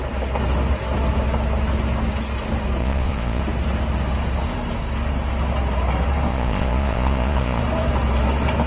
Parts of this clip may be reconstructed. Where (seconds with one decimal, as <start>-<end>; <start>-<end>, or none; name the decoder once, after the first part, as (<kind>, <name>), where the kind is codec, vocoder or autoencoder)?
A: 2.8-3.4 (vocoder, Vocos); 6.3-7.6